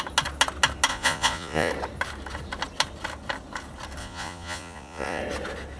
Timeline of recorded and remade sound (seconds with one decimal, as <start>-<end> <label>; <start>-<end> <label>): 0.0-0.9 recorded; 0.9-1.7 remade; 1.7-4.0 recorded; 4.0-5.2 remade; 5.2-5.8 recorded